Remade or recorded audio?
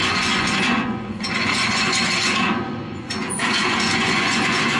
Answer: remade